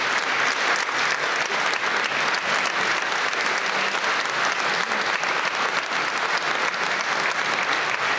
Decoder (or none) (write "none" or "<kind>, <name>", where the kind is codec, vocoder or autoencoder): none